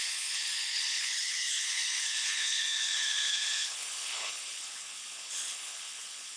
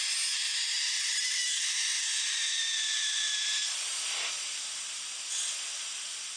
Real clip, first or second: second